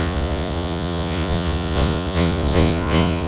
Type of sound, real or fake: fake